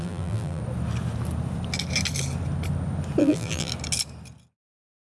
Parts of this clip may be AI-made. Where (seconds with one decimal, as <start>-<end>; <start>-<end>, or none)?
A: 0.0-0.6; 3.2-3.7